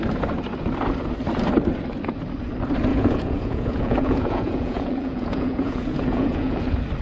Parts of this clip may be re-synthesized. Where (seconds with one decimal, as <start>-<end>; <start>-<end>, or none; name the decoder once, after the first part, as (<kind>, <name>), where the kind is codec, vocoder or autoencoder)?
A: 2.9-6.6 (vocoder, Vocos)